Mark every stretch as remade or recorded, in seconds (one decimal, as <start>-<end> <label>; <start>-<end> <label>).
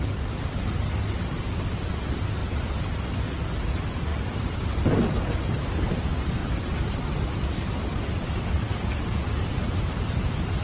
0.0-10.6 recorded